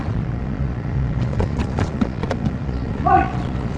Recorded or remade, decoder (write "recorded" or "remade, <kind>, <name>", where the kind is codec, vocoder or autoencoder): remade, vocoder, Vocos